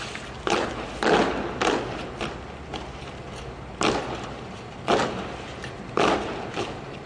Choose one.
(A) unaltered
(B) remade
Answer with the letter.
A